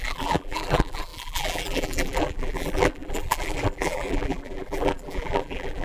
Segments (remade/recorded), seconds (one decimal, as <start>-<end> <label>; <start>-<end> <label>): 0.0-5.8 remade